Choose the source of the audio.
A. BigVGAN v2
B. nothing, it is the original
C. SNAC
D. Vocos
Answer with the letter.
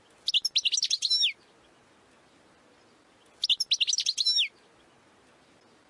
B